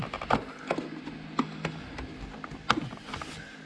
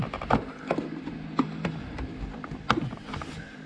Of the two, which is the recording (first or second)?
first